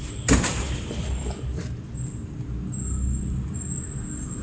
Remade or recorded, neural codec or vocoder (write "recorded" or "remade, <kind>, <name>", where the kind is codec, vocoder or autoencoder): recorded